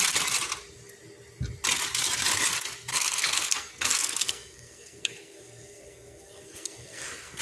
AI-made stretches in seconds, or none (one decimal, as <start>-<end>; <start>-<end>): 2.9-7.4